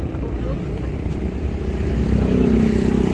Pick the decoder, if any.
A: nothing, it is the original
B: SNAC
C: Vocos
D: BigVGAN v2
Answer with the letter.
A